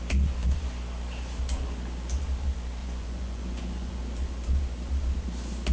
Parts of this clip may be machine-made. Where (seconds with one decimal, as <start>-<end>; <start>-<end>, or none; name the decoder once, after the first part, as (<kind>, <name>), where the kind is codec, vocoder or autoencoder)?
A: 2.8-4.0 (vocoder, Vocos)